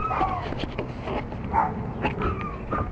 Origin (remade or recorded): recorded